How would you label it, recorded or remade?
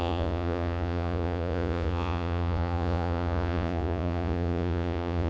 remade